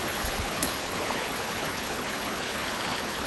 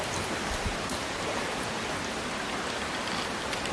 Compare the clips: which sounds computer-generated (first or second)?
first